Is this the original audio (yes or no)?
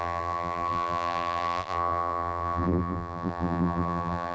no